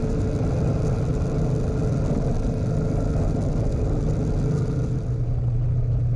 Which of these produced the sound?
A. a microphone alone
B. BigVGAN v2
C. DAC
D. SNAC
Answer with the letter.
A